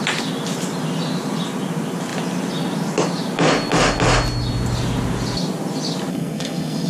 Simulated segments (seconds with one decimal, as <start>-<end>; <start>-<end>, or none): 6.1-6.9